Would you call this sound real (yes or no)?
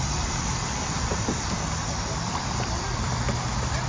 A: no